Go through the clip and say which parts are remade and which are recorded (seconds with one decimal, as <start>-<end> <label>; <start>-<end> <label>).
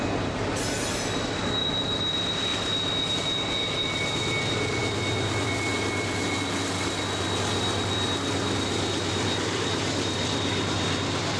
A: 0.0-11.4 recorded